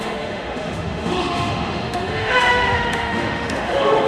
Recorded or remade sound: remade